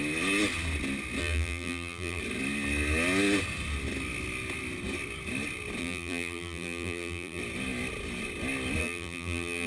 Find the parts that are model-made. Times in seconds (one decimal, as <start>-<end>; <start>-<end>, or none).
1.2-2.2; 5.8-7.4; 8.8-9.7